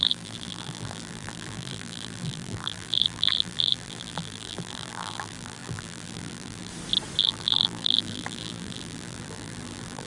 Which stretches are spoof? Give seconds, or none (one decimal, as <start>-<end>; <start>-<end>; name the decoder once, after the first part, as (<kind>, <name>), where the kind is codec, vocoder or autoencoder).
0.0-6.7 (vocoder, BigVGAN v2); 7.2-10.1